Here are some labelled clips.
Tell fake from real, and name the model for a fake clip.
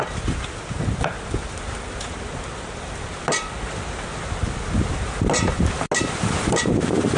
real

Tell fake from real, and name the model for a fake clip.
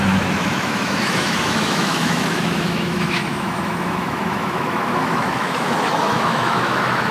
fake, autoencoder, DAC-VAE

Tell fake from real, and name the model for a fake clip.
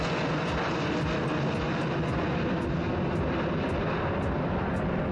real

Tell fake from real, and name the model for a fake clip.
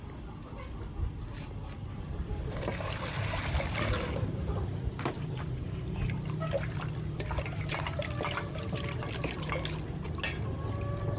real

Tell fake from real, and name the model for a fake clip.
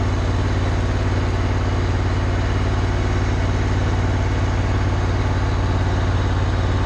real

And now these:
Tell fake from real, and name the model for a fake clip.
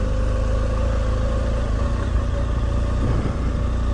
real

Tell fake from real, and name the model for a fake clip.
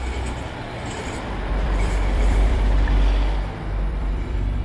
fake, vocoder, BigVGAN v2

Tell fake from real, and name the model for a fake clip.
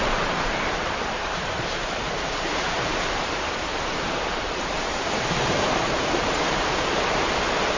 fake, vocoder, BigVGAN v2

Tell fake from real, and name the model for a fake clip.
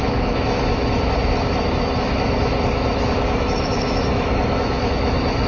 fake, autoencoder, DAC-VAE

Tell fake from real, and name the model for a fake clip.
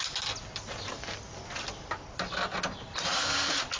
real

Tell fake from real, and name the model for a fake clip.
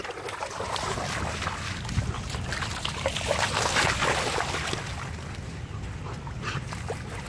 real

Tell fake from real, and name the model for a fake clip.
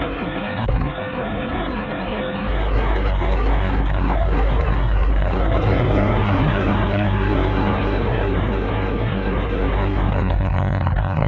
fake, codec, SNAC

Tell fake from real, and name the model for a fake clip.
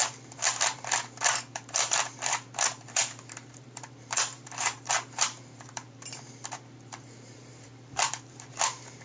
fake, vocoder, BigVGAN v2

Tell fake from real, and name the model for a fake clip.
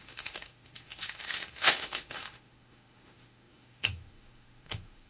fake, autoencoder, DAC-VAE